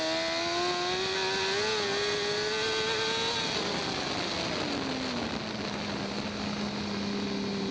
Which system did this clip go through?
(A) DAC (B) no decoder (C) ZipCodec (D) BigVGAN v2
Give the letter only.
B